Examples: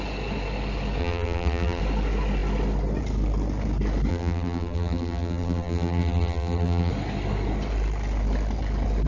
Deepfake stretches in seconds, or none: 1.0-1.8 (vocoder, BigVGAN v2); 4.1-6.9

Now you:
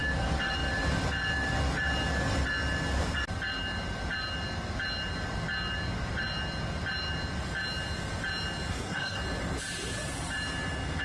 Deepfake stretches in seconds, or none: 8.7-9.2 (codec, SNAC)

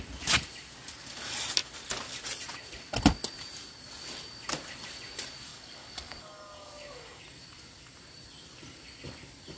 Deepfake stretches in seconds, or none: 5.5-7.2 (codec, DAC)

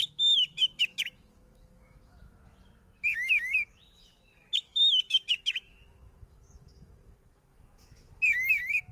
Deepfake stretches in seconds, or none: 0.0-8.9 (autoencoder, DAC-VAE)

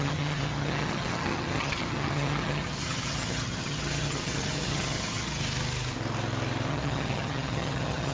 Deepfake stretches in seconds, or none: 0.0-5.4 (vocoder, HiFi-GAN); 6.7-8.1

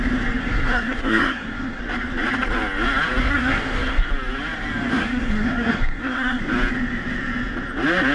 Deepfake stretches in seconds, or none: 0.4-1.8 (codec, SNAC); 3.2-4.1; 4.9-6.4

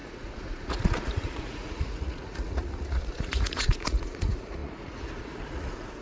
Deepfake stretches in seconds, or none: 0.0-6.0 (vocoder, Vocos)

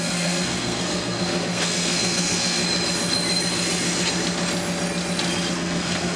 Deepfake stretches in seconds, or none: 0.0-2.6 (codec, SNAC); 5.5-6.2